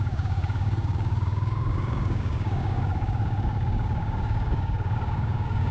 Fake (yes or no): yes